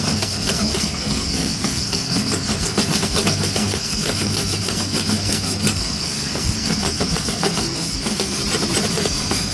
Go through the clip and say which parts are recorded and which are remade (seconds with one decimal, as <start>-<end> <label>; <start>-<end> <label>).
0.0-8.4 remade; 8.4-8.9 recorded; 8.9-9.5 remade